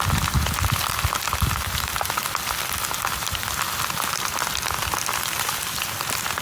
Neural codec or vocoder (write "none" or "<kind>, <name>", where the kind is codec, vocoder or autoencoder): none